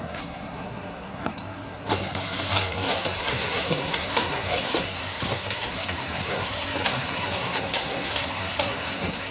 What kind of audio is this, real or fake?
fake